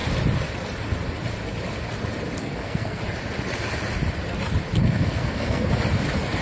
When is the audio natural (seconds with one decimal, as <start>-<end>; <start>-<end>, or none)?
0.0-2.4; 3.0-4.8; 5.7-6.4